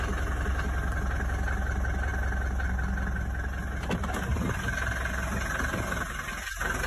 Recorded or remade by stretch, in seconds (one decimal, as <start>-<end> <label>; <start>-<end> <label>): 0.0-6.9 recorded